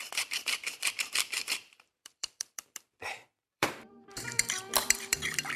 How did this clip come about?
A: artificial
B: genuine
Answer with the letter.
A